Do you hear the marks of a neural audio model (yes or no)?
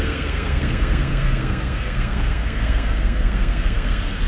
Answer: yes